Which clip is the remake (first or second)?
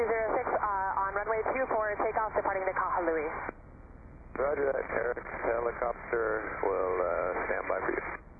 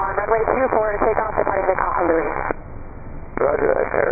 second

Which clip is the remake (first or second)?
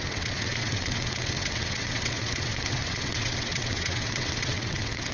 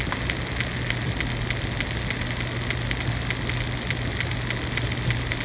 first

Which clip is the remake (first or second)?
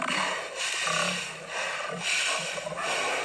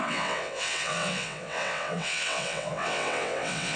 second